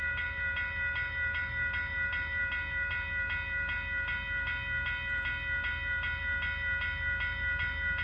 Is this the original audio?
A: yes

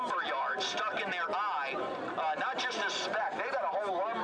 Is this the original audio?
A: yes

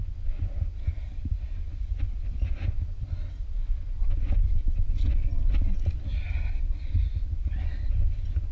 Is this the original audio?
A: yes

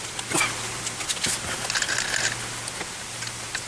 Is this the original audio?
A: yes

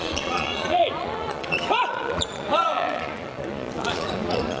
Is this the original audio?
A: no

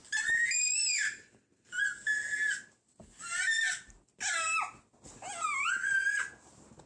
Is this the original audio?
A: yes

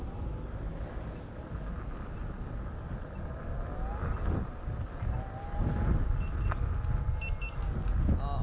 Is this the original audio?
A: yes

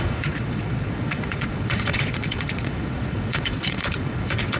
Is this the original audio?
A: no